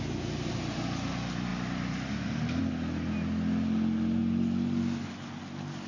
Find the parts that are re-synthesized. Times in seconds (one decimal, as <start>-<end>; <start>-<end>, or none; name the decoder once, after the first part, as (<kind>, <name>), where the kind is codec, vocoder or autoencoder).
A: none